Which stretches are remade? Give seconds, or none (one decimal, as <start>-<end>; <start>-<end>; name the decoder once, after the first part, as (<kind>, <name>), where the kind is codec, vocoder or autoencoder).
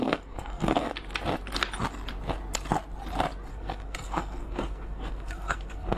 0.0-0.9 (codec, SNAC); 3.5-6.0